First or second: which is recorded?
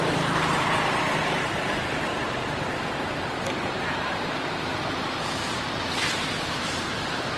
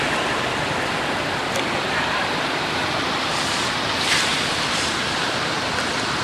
first